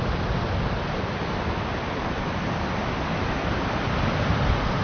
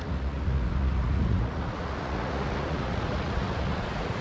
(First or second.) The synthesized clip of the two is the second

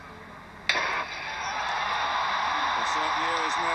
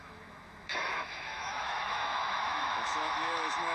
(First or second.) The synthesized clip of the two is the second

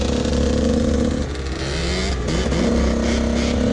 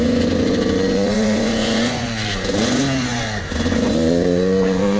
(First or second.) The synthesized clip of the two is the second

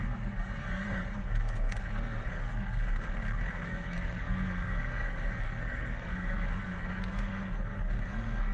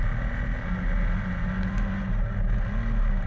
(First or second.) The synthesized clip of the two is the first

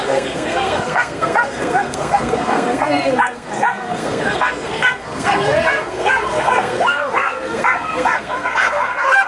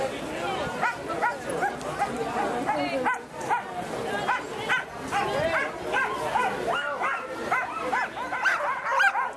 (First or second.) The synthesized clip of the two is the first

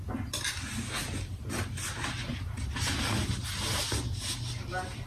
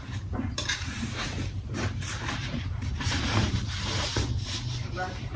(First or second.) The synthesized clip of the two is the second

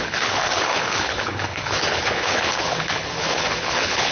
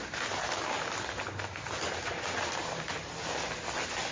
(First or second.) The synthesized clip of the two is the first